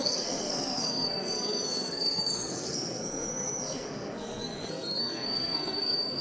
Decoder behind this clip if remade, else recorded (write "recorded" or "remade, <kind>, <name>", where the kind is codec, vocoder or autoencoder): remade, codec, SNAC